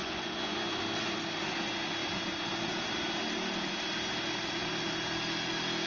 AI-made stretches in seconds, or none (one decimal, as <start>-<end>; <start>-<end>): 0.0-0.8